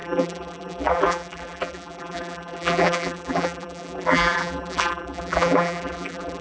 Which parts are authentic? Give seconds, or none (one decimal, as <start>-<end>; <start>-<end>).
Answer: none